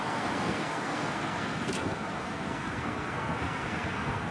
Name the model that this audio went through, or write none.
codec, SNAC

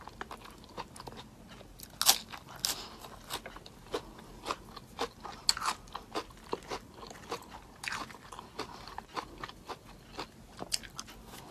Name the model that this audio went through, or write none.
none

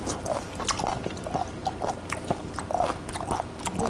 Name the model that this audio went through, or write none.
none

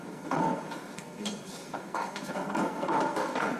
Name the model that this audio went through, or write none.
codec, SNAC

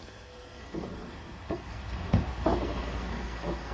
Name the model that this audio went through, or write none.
codec, SNAC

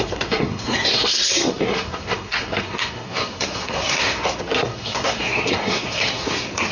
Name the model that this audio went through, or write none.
codec, SNAC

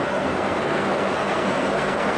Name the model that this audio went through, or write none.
codec, SNAC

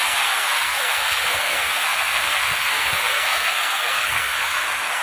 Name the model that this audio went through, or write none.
codec, SNAC